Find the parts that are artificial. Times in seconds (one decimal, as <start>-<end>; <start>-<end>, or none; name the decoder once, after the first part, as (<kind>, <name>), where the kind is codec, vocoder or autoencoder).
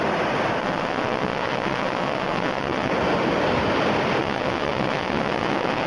0.6-2.9 (vocoder, WaveNeXt); 4.2-5.9